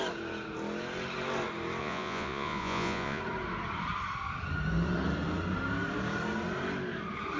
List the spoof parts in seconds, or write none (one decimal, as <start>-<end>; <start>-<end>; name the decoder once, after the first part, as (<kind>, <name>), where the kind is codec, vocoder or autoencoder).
1.8-3.2 (vocoder, Vocos)